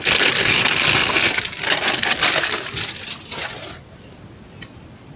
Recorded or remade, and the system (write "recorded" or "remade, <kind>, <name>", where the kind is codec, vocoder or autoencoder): recorded